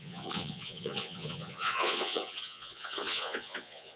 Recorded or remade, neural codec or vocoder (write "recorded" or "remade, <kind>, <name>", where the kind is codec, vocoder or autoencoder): remade, vocoder, Vocos